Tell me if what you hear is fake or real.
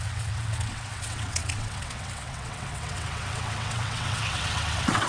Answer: fake